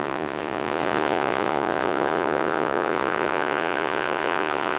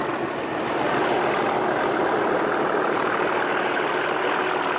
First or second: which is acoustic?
second